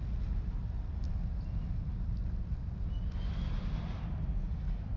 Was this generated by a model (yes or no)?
no